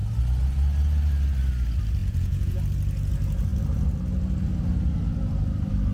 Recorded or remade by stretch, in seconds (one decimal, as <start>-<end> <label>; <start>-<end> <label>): 0.0-2.0 recorded; 2.0-2.6 remade; 2.6-5.9 recorded